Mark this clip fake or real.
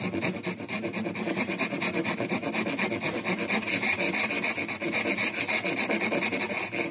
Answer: real